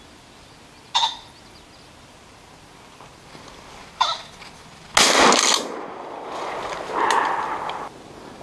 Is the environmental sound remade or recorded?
recorded